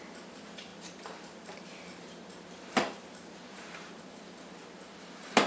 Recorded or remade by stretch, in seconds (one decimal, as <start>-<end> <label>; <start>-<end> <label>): 0.0-0.7 recorded; 0.7-4.0 remade; 4.0-5.5 recorded